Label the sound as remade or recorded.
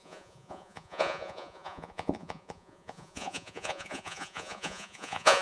remade